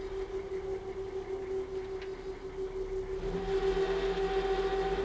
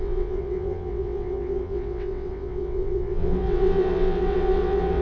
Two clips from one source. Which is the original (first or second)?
first